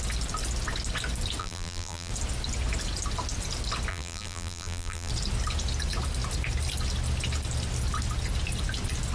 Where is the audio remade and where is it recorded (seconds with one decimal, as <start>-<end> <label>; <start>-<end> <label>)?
0.0-1.4 recorded; 1.4-2.1 remade; 2.1-3.9 recorded; 3.9-5.1 remade; 5.1-9.1 recorded